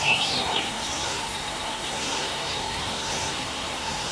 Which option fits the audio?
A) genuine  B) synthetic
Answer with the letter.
B